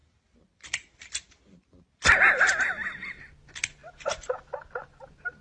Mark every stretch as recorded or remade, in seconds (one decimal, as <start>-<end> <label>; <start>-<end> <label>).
0.0-3.2 remade; 3.2-5.4 recorded